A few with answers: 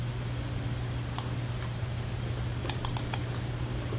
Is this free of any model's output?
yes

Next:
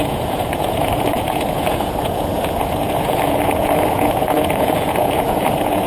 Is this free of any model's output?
no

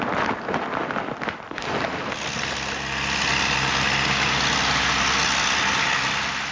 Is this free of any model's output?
yes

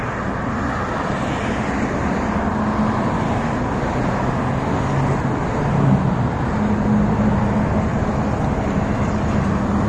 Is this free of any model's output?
yes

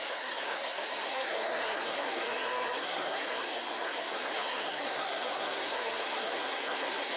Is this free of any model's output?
no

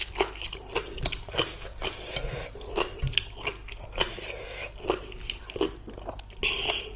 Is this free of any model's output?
yes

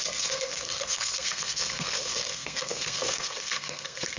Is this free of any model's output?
no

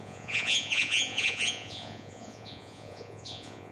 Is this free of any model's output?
no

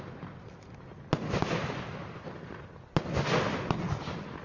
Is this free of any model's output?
yes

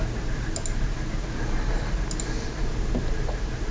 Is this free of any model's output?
yes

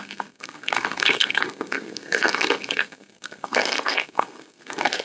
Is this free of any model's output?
no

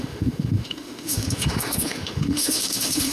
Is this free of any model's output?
no